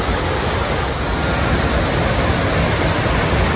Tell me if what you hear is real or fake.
real